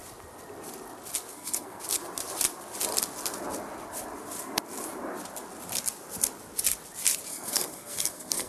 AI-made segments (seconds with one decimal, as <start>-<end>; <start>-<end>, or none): 1.3-1.8; 7.3-8.5